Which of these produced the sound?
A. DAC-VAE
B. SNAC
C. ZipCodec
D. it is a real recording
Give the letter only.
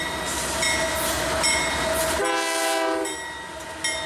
D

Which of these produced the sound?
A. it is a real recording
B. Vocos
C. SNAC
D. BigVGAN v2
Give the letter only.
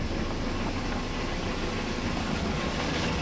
A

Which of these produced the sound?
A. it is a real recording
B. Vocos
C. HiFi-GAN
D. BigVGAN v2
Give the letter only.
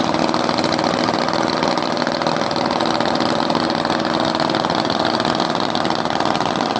A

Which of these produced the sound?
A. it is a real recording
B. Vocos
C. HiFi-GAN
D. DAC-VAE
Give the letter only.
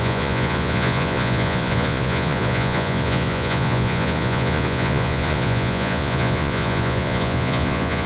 B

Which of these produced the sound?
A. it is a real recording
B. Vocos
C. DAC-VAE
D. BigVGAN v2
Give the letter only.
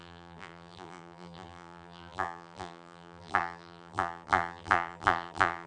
D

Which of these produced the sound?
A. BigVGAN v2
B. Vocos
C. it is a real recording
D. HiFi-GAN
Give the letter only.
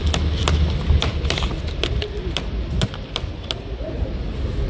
C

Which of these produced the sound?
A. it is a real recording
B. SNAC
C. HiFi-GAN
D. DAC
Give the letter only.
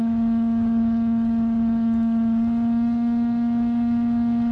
D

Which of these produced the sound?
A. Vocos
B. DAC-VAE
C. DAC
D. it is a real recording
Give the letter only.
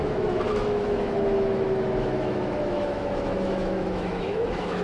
B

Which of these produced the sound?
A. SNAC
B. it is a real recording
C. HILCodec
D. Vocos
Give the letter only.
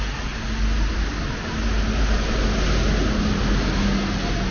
B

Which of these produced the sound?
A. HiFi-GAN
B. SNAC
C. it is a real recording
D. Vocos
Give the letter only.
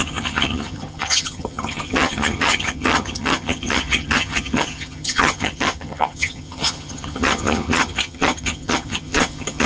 A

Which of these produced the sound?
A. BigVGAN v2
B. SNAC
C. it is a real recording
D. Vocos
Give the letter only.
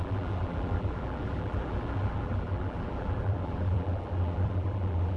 A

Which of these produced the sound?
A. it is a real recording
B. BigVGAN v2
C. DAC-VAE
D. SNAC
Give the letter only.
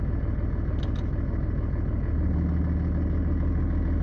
A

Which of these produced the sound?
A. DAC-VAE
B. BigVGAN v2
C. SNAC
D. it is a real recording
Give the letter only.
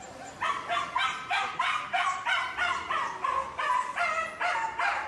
D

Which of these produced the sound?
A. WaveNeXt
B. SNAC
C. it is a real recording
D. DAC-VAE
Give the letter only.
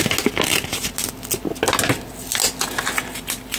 C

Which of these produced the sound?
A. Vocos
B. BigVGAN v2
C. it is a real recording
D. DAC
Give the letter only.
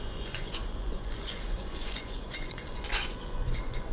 A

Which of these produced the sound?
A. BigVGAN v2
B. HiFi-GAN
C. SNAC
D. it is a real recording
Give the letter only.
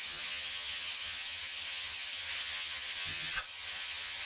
B